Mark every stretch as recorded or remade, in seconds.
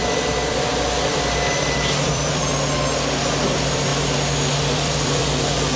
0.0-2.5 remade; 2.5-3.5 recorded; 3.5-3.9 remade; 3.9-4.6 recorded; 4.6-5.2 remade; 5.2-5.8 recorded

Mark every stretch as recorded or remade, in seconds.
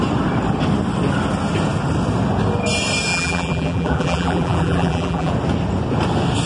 0.0-3.1 recorded; 3.1-5.3 remade; 5.3-6.5 recorded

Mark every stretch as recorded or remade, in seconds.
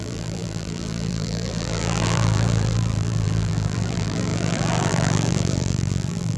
0.0-6.4 remade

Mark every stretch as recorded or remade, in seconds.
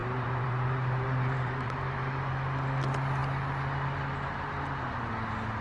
0.0-2.3 remade; 2.3-5.6 recorded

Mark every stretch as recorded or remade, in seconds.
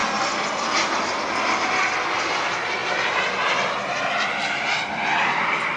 0.0-5.8 recorded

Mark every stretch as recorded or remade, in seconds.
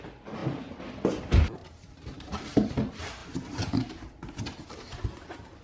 0.0-1.6 recorded; 1.6-2.7 remade; 2.7-3.2 recorded; 3.2-4.4 remade; 4.4-5.6 recorded